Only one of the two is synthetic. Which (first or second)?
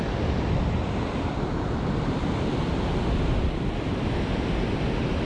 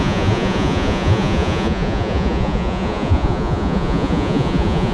second